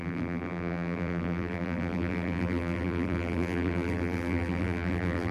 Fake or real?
fake